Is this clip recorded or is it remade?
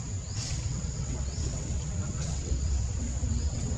remade